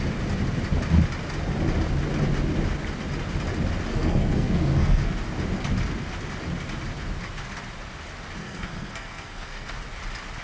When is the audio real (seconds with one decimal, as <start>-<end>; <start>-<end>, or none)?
0.0-3.9; 5.2-8.4; 9.7-10.4